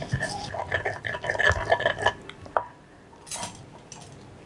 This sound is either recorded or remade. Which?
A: recorded